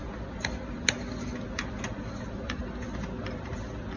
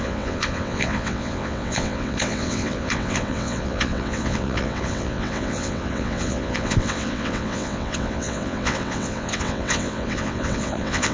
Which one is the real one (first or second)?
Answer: first